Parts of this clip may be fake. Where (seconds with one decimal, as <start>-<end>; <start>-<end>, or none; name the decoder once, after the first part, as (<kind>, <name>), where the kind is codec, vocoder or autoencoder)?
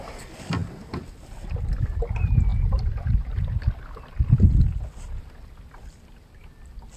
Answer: none